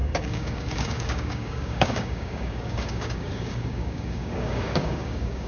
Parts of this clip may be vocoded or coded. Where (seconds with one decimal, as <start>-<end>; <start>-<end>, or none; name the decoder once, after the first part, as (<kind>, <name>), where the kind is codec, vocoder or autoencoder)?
0.0-5.5 (codec, DAC)